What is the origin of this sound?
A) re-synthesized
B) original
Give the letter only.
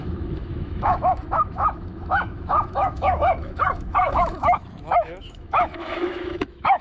A